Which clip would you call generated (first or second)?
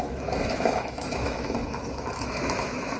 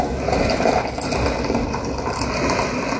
first